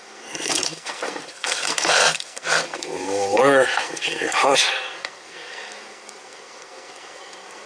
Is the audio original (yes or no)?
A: no